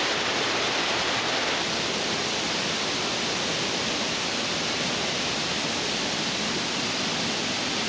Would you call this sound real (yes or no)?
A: yes